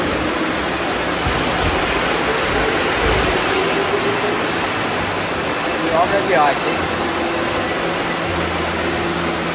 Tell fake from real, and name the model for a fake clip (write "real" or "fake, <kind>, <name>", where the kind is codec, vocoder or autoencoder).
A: real